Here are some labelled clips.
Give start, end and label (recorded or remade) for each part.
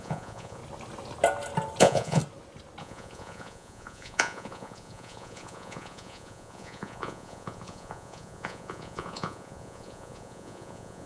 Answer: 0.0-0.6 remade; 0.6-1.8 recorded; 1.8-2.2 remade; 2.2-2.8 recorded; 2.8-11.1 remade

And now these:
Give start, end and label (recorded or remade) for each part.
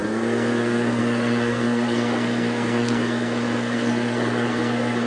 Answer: 0.0-5.1 remade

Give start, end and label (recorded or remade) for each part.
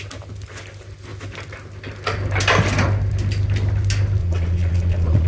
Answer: 0.0-4.2 recorded; 4.2-5.3 remade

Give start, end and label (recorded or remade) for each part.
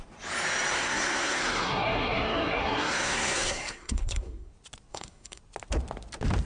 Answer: 0.0-0.8 recorded; 0.8-4.5 remade; 4.5-4.9 recorded; 4.9-5.4 remade; 5.4-6.5 recorded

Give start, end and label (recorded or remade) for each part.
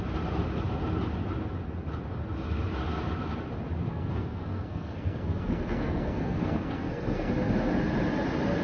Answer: 0.0-3.9 recorded; 3.9-7.3 remade; 7.3-8.6 recorded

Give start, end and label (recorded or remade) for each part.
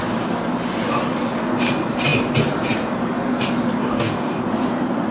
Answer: 0.0-3.8 recorded; 3.8-4.4 remade; 4.4-5.1 recorded